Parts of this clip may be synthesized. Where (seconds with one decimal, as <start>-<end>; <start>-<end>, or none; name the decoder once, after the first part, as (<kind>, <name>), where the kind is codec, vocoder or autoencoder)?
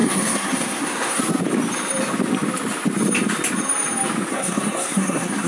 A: 0.0-1.2 (codec, SNAC); 4.3-5.5